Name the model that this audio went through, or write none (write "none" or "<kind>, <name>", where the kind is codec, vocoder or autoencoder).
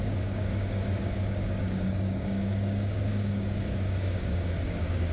codec, DAC